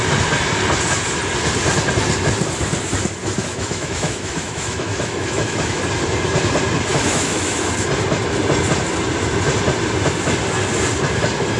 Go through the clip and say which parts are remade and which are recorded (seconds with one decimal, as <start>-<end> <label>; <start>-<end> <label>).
0.0-3.2 recorded; 3.2-5.8 remade; 5.8-6.9 recorded; 6.9-7.7 remade; 7.7-11.6 recorded